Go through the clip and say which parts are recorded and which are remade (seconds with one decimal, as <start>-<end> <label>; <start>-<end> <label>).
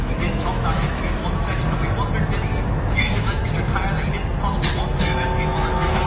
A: 0.0-1.2 remade; 1.2-2.9 recorded; 2.9-3.4 remade; 3.4-4.7 recorded; 4.7-6.1 remade